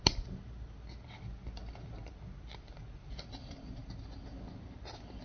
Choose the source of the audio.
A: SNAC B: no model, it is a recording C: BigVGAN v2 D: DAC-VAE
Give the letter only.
B